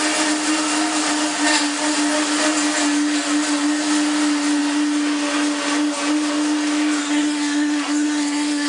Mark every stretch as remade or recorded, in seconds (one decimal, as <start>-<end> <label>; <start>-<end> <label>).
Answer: 0.0-7.0 recorded; 7.0-8.7 remade